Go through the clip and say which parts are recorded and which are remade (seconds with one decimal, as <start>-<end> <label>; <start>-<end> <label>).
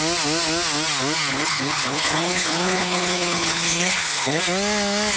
0.0-1.3 recorded; 1.3-4.4 remade; 4.4-5.2 recorded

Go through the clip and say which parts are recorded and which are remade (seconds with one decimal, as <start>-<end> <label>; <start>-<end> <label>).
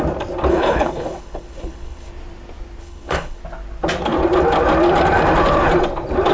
0.0-0.5 recorded; 0.5-2.1 remade; 2.1-2.8 recorded; 2.8-3.4 remade; 3.4-6.3 recorded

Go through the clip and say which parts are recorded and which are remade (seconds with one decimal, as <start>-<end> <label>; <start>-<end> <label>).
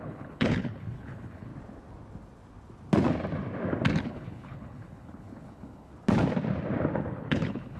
0.0-1.5 remade; 1.5-4.0 recorded; 4.0-5.9 remade; 5.9-7.1 recorded; 7.1-7.8 remade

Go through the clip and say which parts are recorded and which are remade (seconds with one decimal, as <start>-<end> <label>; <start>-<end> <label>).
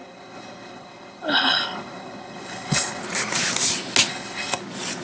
0.0-3.0 remade; 3.0-4.1 recorded; 4.1-4.6 remade; 4.6-5.0 recorded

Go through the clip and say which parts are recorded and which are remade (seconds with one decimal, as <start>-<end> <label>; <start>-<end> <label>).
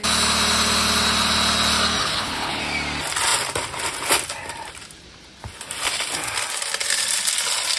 0.0-2.0 recorded; 2.0-2.6 remade; 2.6-7.8 recorded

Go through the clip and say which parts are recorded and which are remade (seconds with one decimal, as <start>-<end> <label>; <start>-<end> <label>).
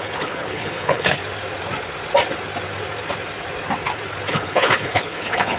0.0-1.2 remade; 1.2-4.3 recorded; 4.3-5.6 remade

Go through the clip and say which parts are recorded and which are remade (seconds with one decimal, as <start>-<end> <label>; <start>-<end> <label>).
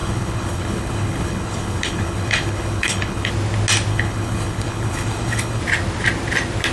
0.0-3.3 remade; 3.3-3.9 recorded; 3.9-5.6 remade; 5.6-6.7 recorded